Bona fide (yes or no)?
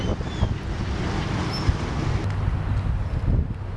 yes